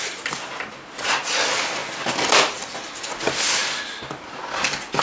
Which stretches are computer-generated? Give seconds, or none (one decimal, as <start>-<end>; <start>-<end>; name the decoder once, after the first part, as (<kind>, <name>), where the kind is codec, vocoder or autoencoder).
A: none